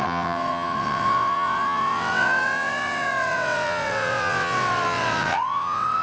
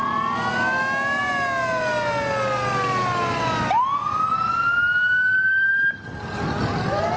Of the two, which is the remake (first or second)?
first